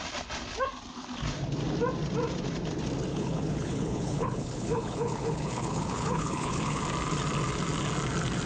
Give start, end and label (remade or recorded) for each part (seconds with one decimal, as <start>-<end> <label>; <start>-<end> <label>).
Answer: 0.0-3.1 recorded; 3.1-6.8 remade; 6.8-8.5 recorded